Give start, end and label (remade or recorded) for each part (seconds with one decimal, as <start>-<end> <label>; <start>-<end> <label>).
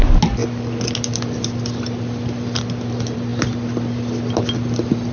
0.0-5.1 recorded